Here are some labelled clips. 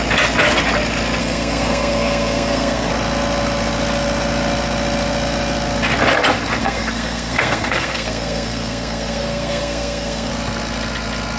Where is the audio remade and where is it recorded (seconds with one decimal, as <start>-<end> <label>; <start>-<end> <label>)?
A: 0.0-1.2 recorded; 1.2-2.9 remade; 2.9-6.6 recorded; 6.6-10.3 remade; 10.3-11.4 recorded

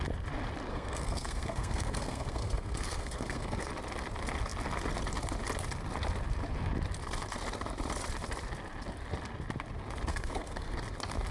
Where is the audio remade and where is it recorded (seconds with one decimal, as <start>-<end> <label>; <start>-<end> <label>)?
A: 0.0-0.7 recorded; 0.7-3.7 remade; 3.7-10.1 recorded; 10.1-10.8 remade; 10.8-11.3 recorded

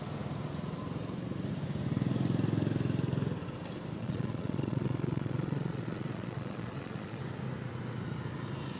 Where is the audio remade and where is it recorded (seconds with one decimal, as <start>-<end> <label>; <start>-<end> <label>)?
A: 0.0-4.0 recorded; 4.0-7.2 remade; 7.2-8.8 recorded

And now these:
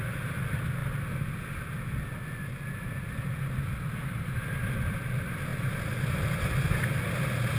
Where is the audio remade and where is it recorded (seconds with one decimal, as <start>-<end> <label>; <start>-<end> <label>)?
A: 0.0-7.6 recorded